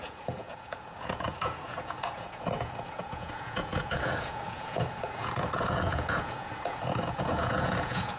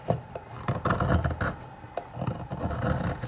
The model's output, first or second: first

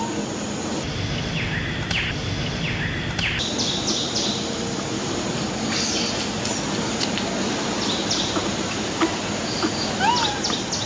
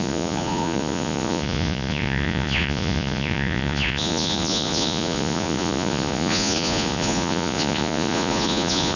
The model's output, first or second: second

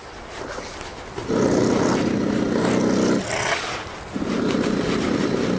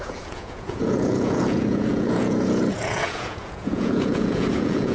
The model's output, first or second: second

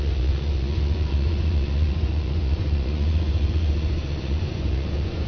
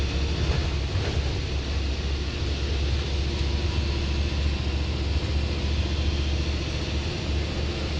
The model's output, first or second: first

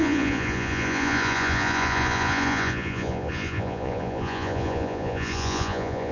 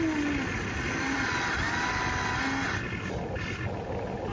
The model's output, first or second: first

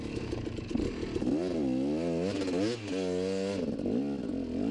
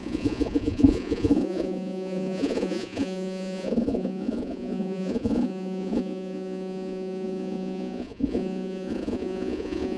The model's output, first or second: second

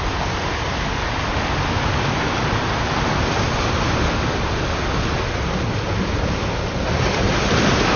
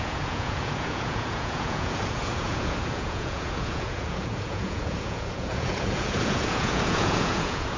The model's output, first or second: second